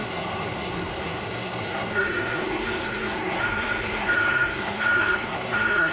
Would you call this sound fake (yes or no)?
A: yes